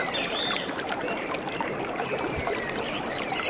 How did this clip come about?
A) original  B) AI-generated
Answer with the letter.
B